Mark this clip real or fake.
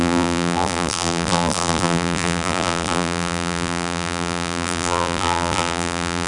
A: fake